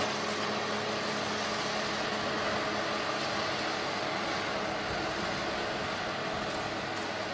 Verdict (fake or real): real